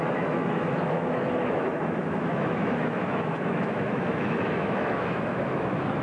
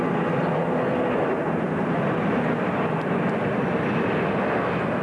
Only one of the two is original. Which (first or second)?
second